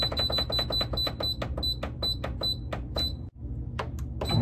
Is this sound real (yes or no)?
yes